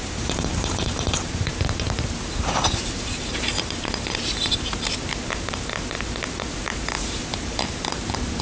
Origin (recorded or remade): remade